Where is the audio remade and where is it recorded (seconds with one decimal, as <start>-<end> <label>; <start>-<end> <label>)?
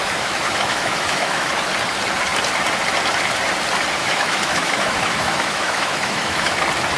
0.0-1.5 remade; 1.5-4.0 recorded; 4.0-6.6 remade; 6.6-7.0 recorded